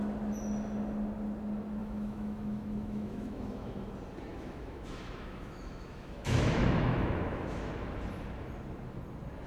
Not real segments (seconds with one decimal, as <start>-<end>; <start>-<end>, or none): 1.8-3.9; 4.3-7.7